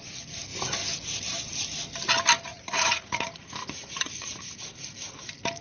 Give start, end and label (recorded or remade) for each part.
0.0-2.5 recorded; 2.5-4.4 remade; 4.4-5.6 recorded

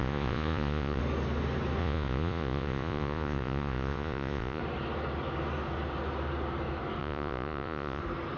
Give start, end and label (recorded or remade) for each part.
0.0-1.0 remade; 1.0-1.8 recorded; 1.8-4.6 remade; 4.6-7.0 recorded; 7.0-8.0 remade; 8.0-8.4 recorded

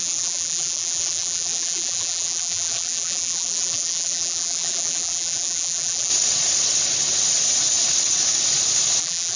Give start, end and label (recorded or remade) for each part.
0.0-6.1 remade; 6.1-9.0 recorded; 9.0-9.4 remade